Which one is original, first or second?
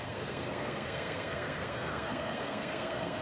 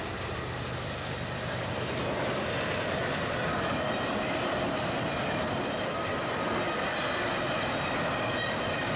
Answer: second